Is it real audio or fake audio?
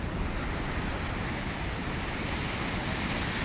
real